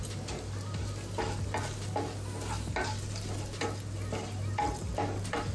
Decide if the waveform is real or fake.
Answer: real